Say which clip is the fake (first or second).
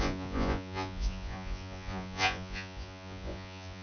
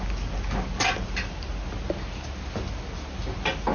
first